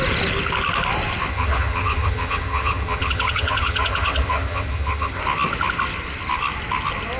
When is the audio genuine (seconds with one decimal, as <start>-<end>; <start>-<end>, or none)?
0.0-1.3; 5.2-7.2